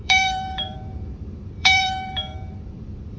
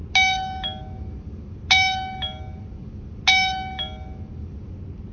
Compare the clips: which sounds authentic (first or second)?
second